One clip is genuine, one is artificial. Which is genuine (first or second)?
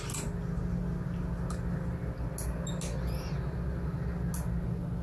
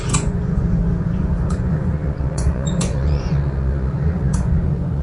first